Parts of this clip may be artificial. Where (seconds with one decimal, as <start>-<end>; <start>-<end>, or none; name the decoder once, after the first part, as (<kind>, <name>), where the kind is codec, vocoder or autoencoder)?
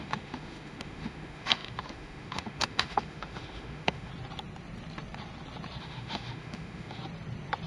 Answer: 0.0-4.1 (autoencoder, DAC-VAE); 5.8-7.0